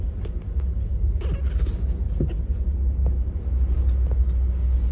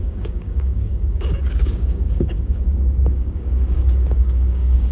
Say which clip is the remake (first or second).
second